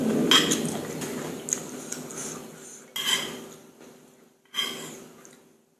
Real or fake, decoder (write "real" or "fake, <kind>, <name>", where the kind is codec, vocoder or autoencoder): real